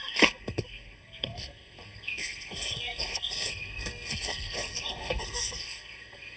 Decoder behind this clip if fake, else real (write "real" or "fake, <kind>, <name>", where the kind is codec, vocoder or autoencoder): fake, codec, SNAC